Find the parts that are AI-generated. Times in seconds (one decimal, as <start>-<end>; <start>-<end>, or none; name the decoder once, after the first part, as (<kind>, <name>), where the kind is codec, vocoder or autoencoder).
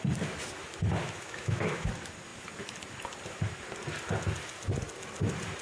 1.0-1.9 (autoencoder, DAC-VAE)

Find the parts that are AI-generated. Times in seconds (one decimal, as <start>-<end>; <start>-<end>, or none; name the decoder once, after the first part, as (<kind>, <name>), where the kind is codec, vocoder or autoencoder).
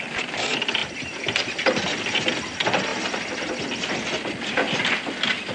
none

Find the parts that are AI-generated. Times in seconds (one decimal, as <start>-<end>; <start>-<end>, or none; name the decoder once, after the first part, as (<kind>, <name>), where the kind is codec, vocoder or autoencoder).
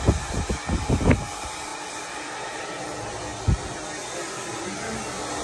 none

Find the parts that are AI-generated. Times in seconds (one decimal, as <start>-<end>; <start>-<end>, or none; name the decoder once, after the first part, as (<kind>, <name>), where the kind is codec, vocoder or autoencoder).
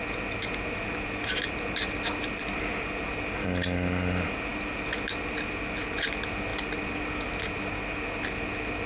none